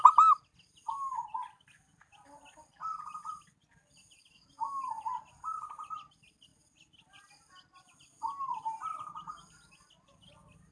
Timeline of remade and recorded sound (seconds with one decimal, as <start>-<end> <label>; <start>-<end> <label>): 0.0-10.7 recorded

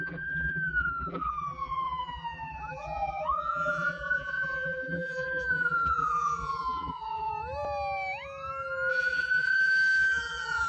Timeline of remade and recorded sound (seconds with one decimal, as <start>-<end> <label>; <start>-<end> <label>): 0.0-7.3 remade; 7.3-8.9 recorded; 8.9-10.7 remade

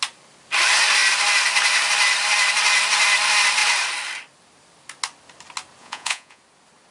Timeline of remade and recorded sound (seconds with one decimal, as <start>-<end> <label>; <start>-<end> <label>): 0.0-5.8 recorded; 5.8-6.4 remade; 6.4-6.9 recorded

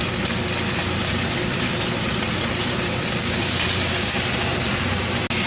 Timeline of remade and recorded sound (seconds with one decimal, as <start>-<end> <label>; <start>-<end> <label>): 0.0-1.0 recorded; 1.0-3.9 remade; 3.9-5.5 recorded

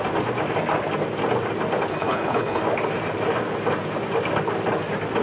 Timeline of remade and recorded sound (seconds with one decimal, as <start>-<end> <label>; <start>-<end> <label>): 0.0-1.9 recorded; 1.9-2.6 remade; 2.6-5.2 recorded

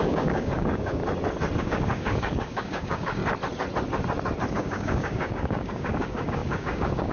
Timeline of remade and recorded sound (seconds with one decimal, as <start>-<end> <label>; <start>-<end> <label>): 0.0-1.0 remade; 1.0-1.6 recorded; 1.6-3.2 remade; 3.2-4.5 recorded; 4.5-7.1 remade